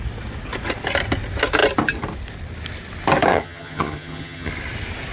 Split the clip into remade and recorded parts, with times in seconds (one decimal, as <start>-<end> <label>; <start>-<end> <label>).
0.0-3.3 recorded; 3.3-4.5 remade; 4.5-5.1 recorded